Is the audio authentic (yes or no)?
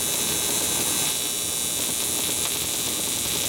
yes